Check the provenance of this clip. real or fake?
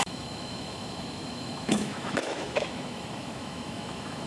fake